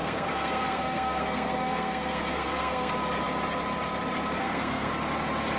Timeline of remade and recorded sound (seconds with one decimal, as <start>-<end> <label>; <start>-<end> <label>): 0.0-2.9 remade; 2.9-4.4 recorded; 4.4-4.9 remade; 4.9-5.6 recorded